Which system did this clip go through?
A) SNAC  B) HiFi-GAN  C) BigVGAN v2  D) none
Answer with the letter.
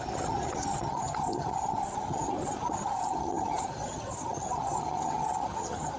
B